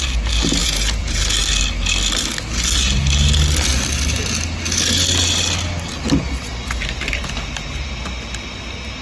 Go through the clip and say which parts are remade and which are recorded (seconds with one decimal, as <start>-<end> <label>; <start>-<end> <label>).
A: 0.0-0.6 recorded; 0.6-1.2 remade; 1.2-9.0 recorded